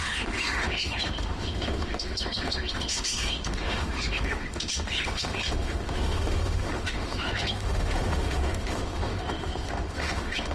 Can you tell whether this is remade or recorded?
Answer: remade